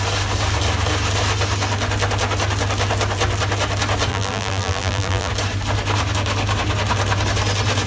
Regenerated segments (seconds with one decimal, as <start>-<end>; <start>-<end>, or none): 4.1-5.3